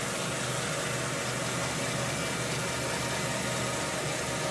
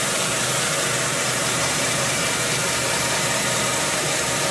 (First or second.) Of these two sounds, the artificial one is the second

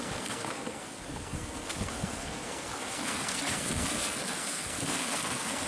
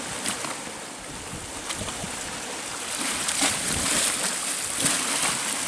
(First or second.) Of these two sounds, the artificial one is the first